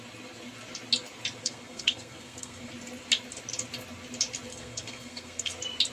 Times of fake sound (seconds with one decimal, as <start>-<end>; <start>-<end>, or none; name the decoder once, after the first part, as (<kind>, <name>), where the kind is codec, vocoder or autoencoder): 1.4-2.7 (codec, SNAC); 4.5-5.5